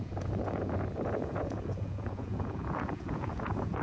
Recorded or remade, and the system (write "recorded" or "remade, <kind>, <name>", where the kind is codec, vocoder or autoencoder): remade, vocoder, Vocos